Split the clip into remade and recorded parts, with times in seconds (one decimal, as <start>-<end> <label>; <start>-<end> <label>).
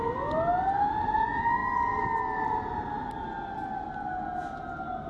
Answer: 0.0-5.1 recorded